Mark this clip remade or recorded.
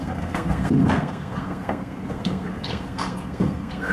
remade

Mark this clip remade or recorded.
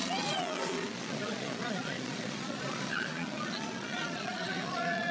remade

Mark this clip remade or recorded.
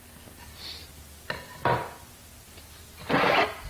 recorded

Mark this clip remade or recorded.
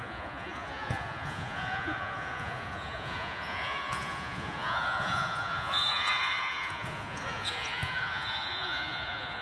remade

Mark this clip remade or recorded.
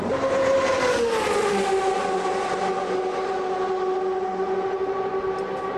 recorded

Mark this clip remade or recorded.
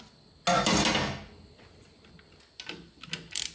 recorded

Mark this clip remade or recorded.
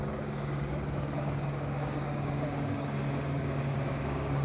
remade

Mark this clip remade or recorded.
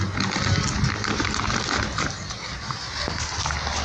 recorded